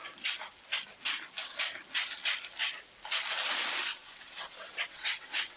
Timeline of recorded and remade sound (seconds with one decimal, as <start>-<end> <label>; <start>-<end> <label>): 0.0-3.8 recorded; 3.8-5.6 remade